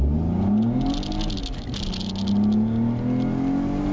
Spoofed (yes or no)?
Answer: no